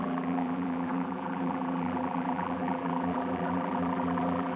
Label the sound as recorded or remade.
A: remade